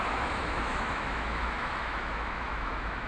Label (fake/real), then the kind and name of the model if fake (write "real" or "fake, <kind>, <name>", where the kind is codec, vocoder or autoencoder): fake, autoencoder, DAC-VAE